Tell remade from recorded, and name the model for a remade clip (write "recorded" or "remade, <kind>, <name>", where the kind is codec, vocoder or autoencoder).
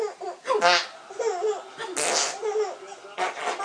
recorded